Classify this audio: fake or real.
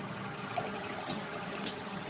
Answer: fake